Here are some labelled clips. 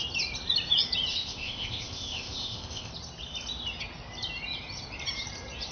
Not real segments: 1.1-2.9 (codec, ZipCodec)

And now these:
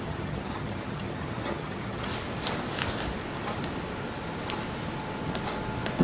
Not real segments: 0.0-2.1 (vocoder, HiFi-GAN)

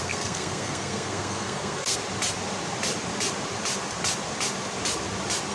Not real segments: 0.0-2.0 (codec, SNAC)

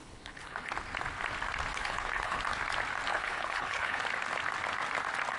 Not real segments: 0.0-0.7 (codec, HILCodec); 1.7-2.4; 3.1-4.0

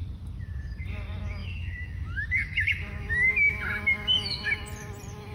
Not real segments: 1.4-4.6 (autoencoder, DAC-VAE)